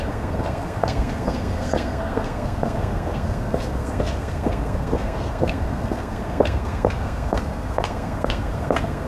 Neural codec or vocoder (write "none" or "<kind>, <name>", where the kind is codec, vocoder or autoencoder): codec, SNAC